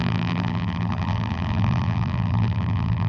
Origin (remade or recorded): remade